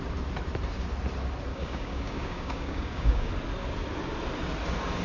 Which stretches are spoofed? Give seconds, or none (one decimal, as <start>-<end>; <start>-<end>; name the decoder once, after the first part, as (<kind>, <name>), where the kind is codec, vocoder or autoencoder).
1.5-3.3 (codec, DAC)